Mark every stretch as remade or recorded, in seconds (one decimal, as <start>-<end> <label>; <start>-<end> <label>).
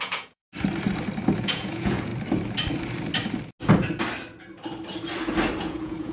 0.0-0.4 remade; 0.4-1.4 recorded; 1.4-2.1 remade; 2.1-5.6 recorded; 5.6-6.1 remade